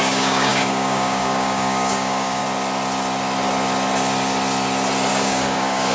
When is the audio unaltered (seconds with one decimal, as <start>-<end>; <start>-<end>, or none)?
2.4-5.1